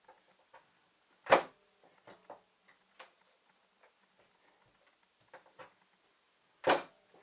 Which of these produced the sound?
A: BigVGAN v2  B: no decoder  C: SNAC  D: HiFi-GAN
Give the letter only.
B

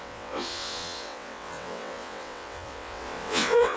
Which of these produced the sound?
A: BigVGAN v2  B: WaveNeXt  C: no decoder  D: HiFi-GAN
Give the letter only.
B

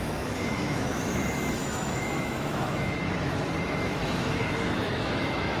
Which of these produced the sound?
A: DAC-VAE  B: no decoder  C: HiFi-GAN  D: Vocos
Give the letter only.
A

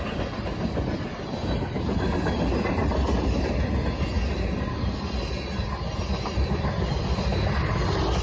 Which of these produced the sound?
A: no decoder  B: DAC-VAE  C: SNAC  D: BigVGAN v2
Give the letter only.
A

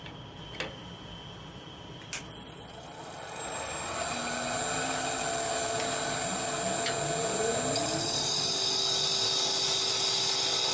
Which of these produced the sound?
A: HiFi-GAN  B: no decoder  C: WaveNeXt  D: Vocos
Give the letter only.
B